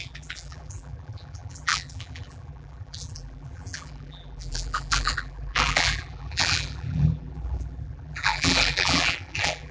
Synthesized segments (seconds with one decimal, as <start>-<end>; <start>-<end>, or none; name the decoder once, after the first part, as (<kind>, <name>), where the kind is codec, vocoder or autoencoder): 0.0-9.7 (vocoder, BigVGAN v2)